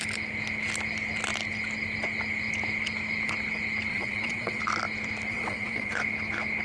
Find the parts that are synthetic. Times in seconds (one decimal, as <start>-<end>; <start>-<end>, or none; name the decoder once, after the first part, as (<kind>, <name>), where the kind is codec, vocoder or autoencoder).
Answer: 3.9-4.6 (vocoder, WaveNeXt); 5.3-5.9